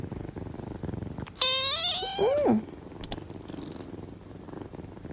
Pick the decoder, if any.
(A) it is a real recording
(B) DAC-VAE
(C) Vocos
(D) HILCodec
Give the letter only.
A